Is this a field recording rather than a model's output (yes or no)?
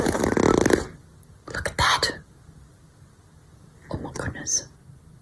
yes